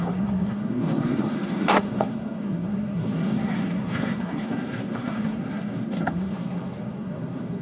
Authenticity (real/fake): fake